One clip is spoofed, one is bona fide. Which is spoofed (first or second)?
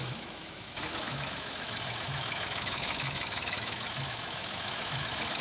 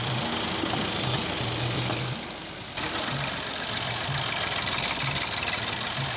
first